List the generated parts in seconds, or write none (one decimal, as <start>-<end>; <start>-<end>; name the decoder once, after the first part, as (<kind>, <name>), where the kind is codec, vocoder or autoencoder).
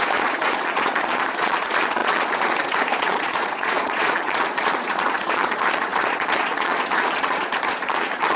0.0-8.4 (vocoder, Vocos)